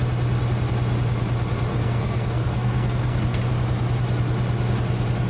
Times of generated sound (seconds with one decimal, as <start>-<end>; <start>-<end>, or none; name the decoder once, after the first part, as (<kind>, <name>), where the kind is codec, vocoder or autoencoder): 1.7-3.4 (codec, SNAC)

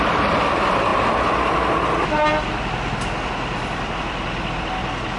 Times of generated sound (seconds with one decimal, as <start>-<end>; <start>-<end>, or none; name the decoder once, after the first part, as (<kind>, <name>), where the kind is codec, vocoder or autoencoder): none

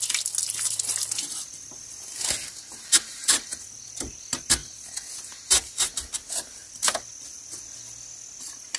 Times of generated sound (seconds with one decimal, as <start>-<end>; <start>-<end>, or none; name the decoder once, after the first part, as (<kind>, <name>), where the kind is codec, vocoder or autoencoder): none